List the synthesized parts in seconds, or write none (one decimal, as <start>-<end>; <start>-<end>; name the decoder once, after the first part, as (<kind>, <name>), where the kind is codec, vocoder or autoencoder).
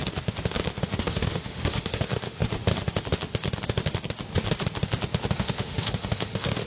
0.8-2.4 (autoencoder, DAC-VAE); 5.3-6.7